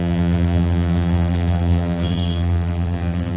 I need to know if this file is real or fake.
fake